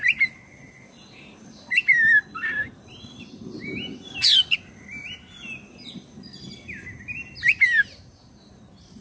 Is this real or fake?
real